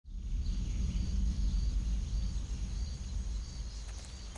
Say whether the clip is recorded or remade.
recorded